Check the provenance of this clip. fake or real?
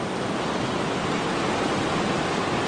real